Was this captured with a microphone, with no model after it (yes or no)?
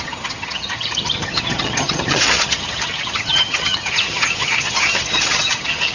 no